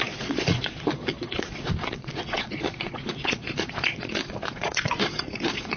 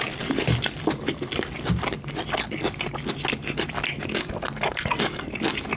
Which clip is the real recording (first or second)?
second